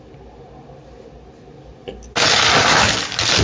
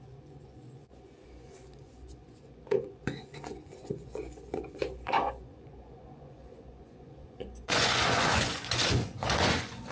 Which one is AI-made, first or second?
second